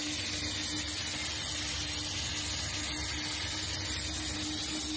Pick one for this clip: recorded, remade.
recorded